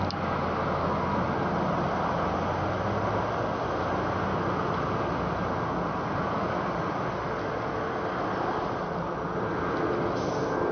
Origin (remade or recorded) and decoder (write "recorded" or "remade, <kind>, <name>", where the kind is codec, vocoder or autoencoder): recorded